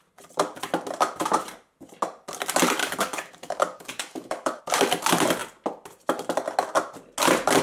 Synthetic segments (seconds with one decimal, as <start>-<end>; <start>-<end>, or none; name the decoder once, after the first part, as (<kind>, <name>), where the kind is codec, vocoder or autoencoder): 2.8-4.6 (codec, DAC)